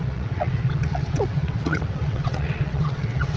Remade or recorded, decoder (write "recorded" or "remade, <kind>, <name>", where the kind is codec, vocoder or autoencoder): remade, vocoder, WaveNeXt